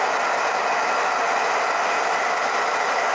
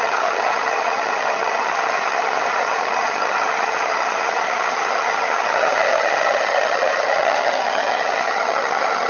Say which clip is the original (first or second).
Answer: first